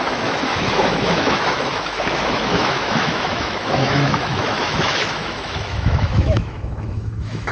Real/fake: fake